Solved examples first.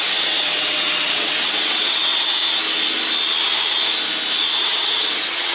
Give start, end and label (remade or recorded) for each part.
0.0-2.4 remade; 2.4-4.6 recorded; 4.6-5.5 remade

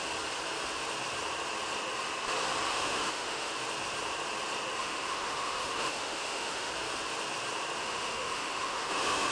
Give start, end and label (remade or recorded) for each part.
0.0-2.7 recorded; 2.7-3.5 remade; 3.5-4.8 recorded; 4.8-6.7 remade; 6.7-7.8 recorded; 7.8-9.3 remade

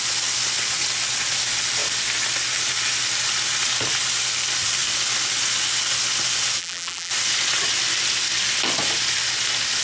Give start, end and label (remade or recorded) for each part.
0.0-6.6 recorded; 6.6-7.1 remade; 7.1-9.8 recorded

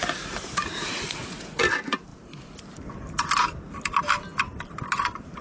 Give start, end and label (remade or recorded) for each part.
0.0-0.6 recorded; 0.6-1.6 remade; 1.6-5.4 recorded